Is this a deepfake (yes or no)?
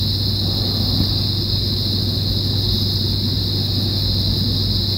no